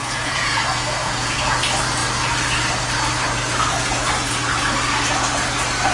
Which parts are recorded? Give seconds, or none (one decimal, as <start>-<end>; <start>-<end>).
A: 0.6-1.0; 1.6-5.9